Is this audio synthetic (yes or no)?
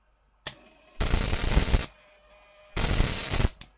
no